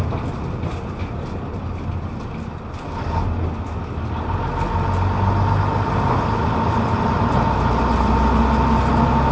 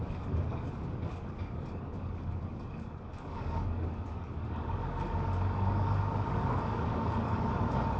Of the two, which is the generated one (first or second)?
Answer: second